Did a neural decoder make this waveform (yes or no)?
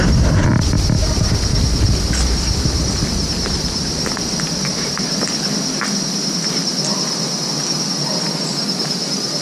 no